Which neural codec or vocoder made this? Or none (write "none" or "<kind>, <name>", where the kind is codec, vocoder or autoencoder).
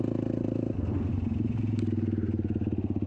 none